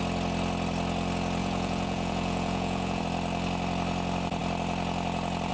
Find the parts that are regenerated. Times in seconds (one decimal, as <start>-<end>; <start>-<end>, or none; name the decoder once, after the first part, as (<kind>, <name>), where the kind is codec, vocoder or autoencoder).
1.4-3.0 (vocoder, Vocos)